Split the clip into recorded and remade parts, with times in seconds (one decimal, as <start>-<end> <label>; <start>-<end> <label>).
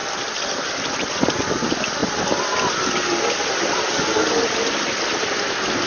0.0-1.5 remade; 1.5-2.0 recorded; 2.0-4.6 remade; 4.6-5.9 recorded